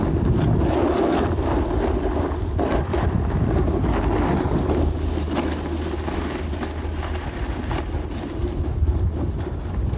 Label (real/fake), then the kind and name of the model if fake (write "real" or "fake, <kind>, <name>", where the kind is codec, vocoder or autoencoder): real